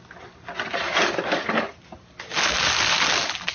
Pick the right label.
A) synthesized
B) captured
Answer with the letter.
B